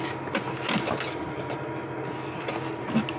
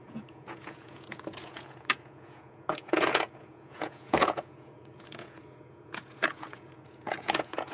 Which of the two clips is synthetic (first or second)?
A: second